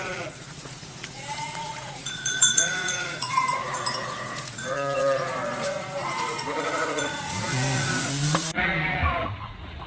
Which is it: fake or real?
fake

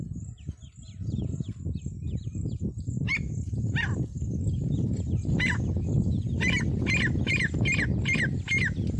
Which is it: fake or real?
real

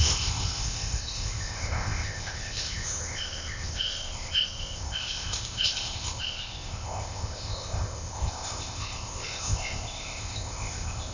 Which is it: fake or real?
fake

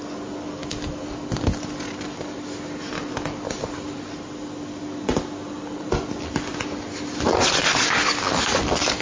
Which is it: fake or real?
real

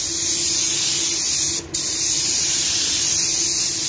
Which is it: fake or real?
real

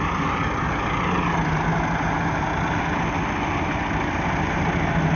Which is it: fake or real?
real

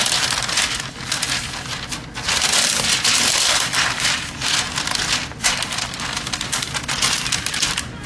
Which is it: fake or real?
real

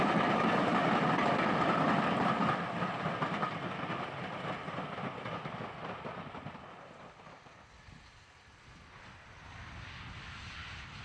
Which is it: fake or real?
real